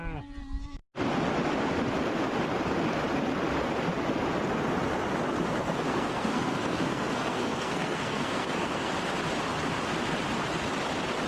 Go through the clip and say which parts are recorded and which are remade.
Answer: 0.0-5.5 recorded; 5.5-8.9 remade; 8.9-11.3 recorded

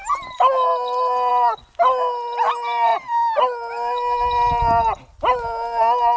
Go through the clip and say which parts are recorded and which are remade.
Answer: 0.0-6.2 recorded

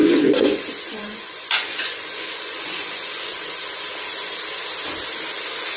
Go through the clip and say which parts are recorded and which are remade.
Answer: 0.0-3.5 remade; 3.5-5.8 recorded

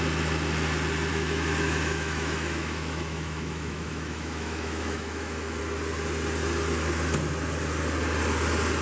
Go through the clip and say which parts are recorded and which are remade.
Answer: 0.0-1.1 recorded; 1.1-5.6 remade; 5.6-8.8 recorded

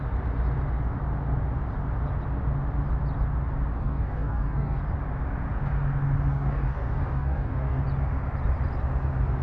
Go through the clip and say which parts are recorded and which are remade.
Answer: 0.0-3.8 recorded; 3.8-4.8 remade; 4.8-6.3 recorded; 6.3-7.8 remade; 7.8-9.4 recorded

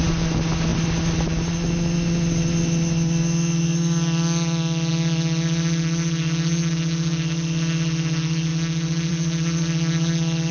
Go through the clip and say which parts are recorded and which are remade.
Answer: 0.0-10.5 recorded

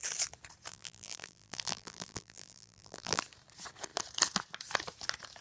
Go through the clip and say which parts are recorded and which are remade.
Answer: 0.0-0.7 recorded; 0.7-3.2 remade; 3.2-5.4 recorded